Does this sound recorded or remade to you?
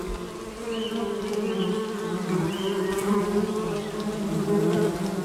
recorded